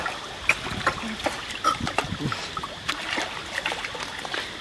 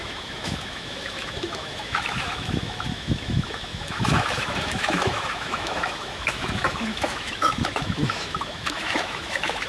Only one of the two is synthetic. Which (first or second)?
second